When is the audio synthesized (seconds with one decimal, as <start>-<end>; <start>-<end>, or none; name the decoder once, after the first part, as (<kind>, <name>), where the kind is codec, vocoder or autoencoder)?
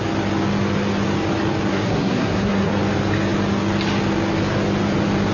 1.7-2.7 (codec, SNAC)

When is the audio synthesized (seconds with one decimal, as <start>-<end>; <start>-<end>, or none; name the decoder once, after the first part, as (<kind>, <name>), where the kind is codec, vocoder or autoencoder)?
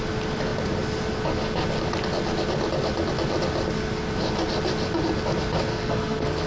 5.7-6.5 (codec, SNAC)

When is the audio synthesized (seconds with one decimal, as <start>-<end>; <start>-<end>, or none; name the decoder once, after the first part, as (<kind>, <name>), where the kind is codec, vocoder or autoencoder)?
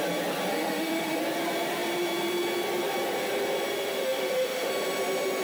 0.5-1.2 (autoencoder, DAC-VAE); 3.7-4.7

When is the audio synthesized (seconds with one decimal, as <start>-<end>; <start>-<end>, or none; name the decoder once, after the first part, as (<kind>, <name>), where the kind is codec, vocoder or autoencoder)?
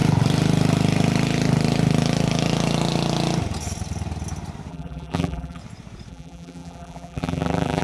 4.7-5.6 (vocoder, BigVGAN v2); 6.1-7.8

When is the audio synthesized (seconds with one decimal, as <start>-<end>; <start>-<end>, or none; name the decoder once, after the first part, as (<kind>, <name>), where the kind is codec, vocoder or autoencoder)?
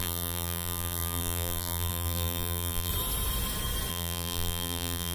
0.0-2.9 (vocoder, BigVGAN v2); 3.9-5.1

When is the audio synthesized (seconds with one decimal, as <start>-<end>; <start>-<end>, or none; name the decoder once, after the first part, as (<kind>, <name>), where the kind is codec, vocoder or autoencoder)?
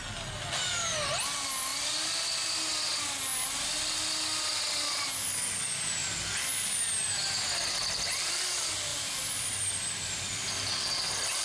6.0-8.1 (vocoder, BigVGAN v2); 8.9-10.7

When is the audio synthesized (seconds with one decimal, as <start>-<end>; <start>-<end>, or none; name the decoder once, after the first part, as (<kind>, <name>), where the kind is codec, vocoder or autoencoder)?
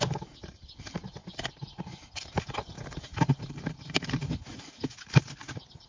none